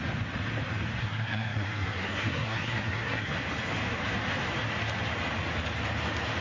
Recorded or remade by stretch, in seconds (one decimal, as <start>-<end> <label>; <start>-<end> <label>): 0.0-1.0 recorded; 1.0-3.3 remade; 3.3-6.4 recorded